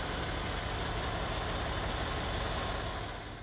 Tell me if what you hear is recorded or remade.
recorded